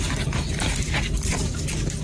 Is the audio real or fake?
real